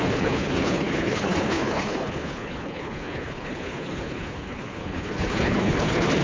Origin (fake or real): fake